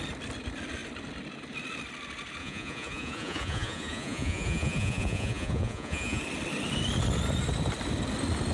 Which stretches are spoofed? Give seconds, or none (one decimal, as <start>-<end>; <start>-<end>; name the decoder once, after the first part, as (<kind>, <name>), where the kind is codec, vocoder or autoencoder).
2.4-6.2 (vocoder, Vocos)